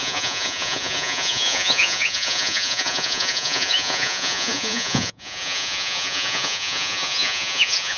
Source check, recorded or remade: remade